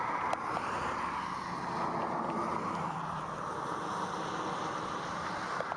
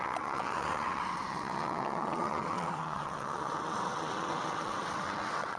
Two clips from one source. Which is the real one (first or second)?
first